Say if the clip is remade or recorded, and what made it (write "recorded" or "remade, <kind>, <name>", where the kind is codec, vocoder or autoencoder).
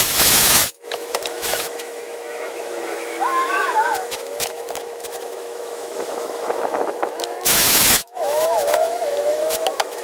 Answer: remade, autoencoder, DAC-VAE